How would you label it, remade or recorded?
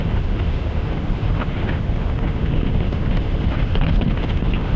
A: remade